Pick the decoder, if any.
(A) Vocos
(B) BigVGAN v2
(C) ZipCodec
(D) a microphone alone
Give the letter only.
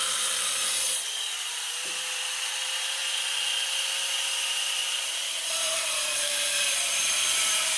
B